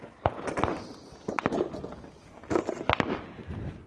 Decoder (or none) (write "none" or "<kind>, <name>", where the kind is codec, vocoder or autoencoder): none